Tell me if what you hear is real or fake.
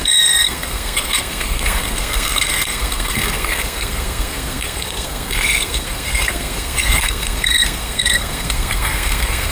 fake